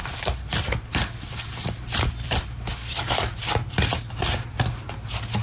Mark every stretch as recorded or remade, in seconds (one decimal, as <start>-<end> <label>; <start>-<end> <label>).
0.0-3.0 remade; 3.0-5.4 recorded